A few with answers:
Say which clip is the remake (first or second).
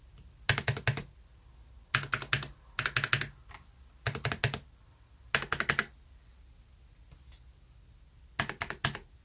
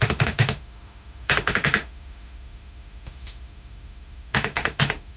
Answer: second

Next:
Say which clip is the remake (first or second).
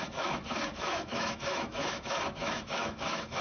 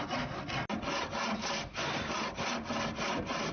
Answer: first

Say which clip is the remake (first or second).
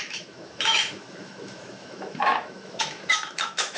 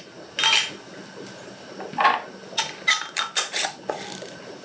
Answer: first